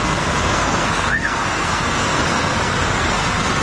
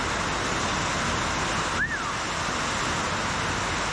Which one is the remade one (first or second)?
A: first